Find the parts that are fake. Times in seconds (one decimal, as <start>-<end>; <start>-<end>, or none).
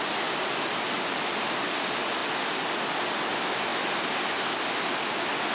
none